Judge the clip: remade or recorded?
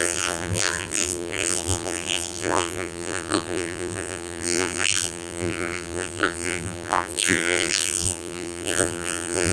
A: remade